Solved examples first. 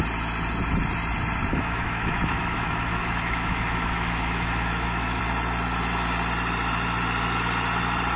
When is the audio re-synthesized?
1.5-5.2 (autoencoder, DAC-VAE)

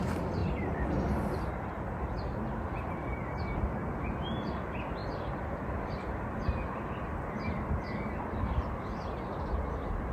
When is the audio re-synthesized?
none

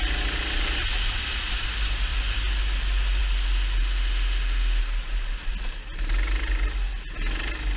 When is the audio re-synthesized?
3.8-4.8 (autoencoder, DAC-VAE)

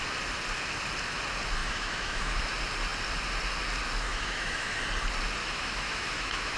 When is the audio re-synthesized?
1.6-2.4 (autoencoder, DAC-VAE); 4.1-4.8; 5.4-6.6

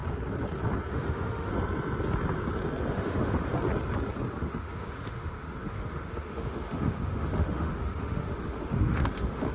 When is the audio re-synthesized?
0.9-1.5 (autoencoder, DAC-VAE); 2.9-3.5; 4.4-9.5

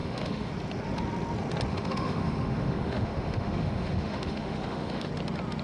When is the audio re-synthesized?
0.0-0.5 (autoencoder, DAC-VAE); 1.7-5.1

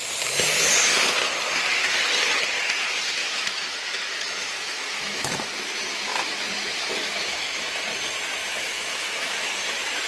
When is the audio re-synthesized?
3.2-7.6 (autoencoder, DAC-VAE); 8.4-9.6